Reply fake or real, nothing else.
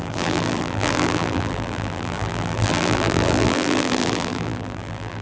fake